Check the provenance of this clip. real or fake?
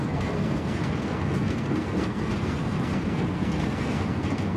fake